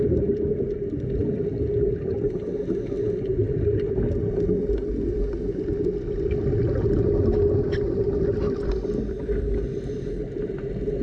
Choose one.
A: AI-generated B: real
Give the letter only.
B